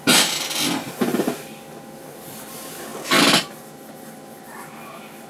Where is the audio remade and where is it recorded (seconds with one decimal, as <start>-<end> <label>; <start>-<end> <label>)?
0.0-5.3 recorded